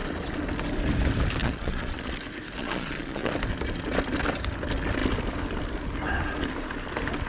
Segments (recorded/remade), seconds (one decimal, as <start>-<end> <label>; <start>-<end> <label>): 0.0-1.4 recorded; 1.4-2.1 remade; 2.1-2.6 recorded; 2.6-3.3 remade; 3.3-7.3 recorded